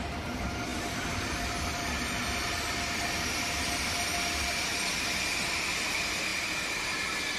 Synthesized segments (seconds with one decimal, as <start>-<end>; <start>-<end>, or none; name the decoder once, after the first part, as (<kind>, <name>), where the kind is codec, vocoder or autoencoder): none